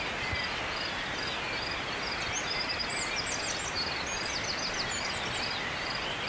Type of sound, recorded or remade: recorded